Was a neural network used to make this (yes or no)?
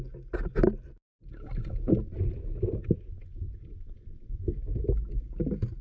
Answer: no